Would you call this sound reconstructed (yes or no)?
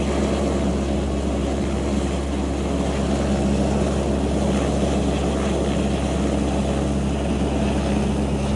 no